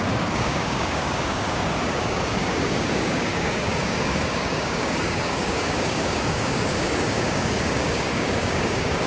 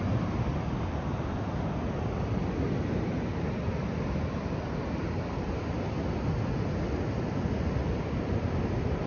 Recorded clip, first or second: second